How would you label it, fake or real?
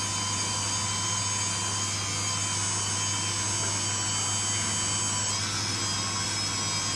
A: real